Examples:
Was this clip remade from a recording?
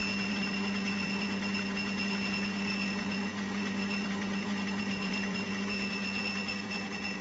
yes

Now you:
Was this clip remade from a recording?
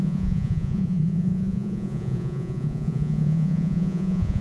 yes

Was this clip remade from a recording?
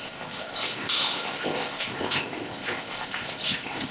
yes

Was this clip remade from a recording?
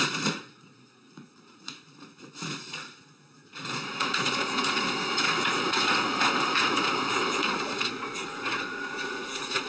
yes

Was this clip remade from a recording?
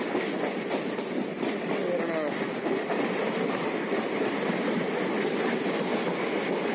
no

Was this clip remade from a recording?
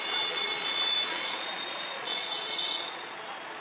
yes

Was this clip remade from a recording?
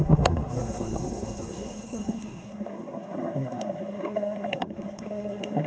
yes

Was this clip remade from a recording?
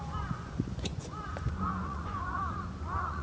yes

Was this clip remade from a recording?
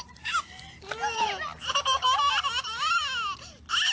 no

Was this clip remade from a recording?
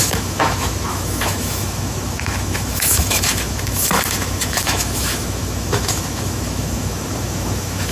yes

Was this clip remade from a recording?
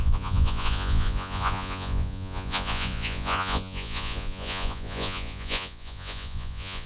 yes